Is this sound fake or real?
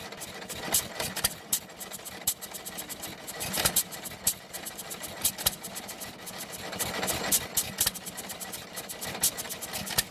real